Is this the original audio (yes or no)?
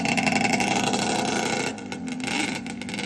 yes